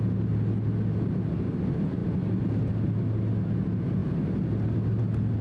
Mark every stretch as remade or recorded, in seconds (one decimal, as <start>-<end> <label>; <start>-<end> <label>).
0.0-5.4 recorded